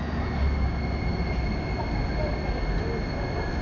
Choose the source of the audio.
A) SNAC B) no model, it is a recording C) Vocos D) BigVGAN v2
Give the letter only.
B